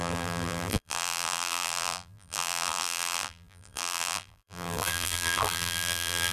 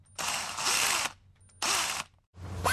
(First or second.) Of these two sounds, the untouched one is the second